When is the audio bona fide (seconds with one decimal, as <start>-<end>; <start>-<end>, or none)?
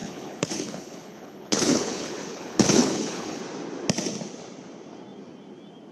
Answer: 3.4-5.9